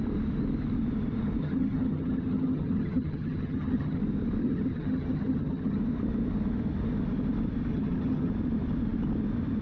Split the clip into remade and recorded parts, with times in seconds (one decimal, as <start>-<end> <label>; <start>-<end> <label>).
0.0-1.4 recorded; 1.4-4.0 remade; 4.0-4.4 recorded; 4.4-5.8 remade; 5.8-7.7 recorded; 7.7-8.3 remade; 8.3-9.6 recorded